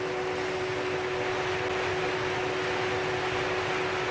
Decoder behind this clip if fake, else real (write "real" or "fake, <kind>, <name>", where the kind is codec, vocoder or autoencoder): real